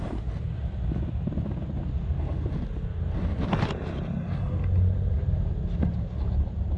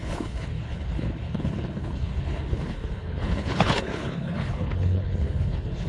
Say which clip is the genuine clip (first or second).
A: first